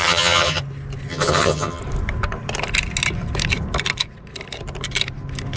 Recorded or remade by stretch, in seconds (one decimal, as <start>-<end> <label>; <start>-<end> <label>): 0.0-0.6 remade; 0.6-1.1 recorded; 1.1-1.8 remade; 1.8-5.6 recorded